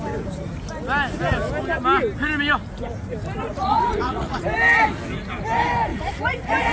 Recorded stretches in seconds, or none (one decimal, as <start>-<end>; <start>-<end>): 0.0-3.4; 4.4-5.9